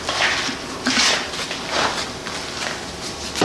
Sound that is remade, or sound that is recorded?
recorded